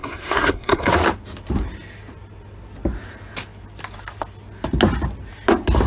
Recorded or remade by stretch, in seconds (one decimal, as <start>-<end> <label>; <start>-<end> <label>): 0.0-0.9 remade; 0.9-5.9 recorded